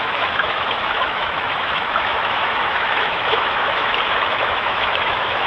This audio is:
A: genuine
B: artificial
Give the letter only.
B